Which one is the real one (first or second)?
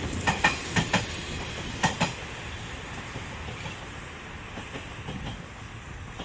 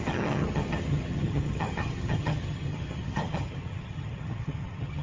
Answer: first